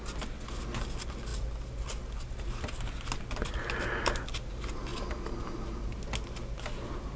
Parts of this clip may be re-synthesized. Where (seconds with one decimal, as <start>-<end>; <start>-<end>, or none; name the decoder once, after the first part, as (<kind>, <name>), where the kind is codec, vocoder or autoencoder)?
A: none